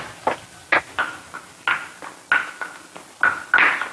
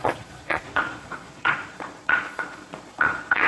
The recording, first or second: first